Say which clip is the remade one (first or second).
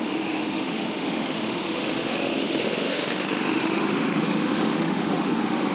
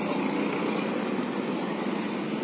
first